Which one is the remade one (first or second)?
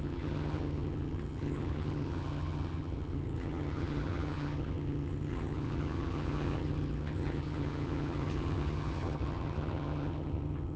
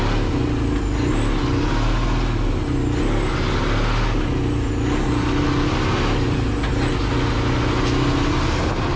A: first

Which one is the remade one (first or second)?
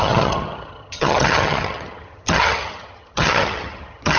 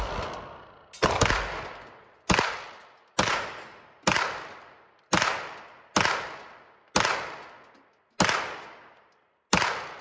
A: first